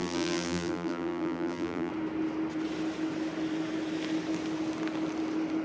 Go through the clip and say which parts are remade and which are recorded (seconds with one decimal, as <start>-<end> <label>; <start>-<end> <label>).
0.0-1.9 remade; 1.9-5.6 recorded